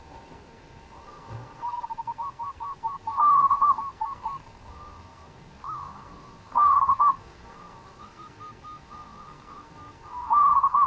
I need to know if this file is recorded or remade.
remade